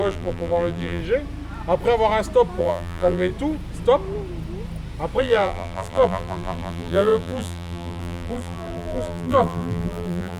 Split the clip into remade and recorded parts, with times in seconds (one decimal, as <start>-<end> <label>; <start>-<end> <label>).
0.0-1.0 remade; 1.0-2.6 recorded; 2.6-3.3 remade; 3.3-5.2 recorded; 5.2-10.4 remade